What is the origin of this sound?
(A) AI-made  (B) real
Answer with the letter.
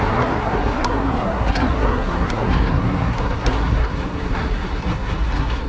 A